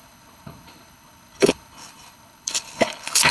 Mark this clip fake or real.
fake